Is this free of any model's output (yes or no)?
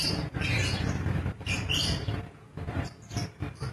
no